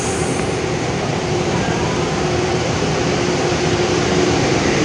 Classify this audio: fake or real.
fake